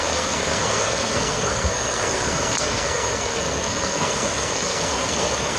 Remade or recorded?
remade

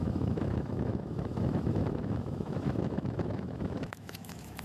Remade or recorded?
remade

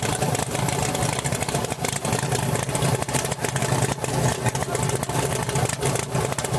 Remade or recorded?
recorded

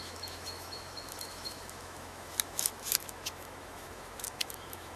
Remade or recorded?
remade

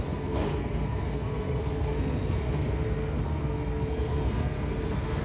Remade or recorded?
remade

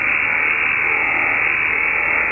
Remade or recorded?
recorded